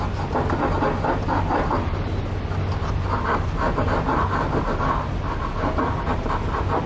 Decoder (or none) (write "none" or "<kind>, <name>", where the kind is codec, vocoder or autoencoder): none